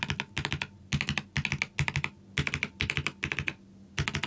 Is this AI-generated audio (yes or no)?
no